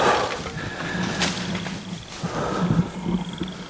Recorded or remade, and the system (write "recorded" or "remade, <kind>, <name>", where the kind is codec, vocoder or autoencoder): recorded